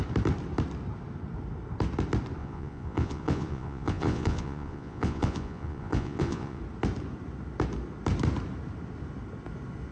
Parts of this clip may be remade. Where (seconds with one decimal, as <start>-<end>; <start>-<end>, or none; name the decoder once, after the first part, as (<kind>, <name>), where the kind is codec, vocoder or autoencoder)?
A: 2.4-6.6 (vocoder, Vocos)